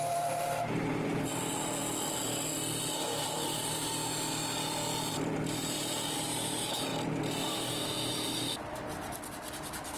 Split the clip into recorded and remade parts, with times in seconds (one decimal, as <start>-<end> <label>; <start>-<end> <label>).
0.0-1.8 remade; 1.8-2.8 recorded; 2.8-4.0 remade; 4.0-5.0 recorded; 5.0-10.0 remade